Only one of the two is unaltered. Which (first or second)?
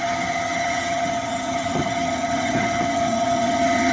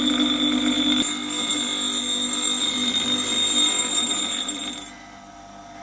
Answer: second